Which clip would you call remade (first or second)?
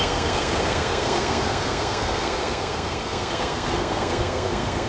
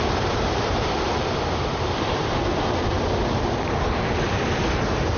first